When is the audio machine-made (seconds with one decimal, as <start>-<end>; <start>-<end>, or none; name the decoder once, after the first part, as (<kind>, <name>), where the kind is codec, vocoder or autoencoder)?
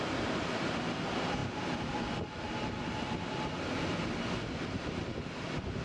none